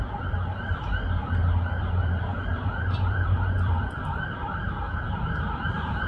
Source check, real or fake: fake